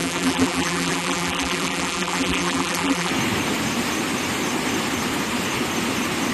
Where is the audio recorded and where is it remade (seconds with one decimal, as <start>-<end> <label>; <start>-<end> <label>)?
0.0-3.1 remade; 3.1-6.3 recorded